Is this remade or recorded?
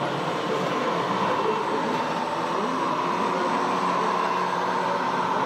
recorded